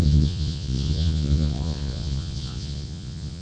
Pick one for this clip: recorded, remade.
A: remade